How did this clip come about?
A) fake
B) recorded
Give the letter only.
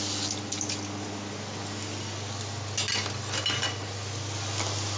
B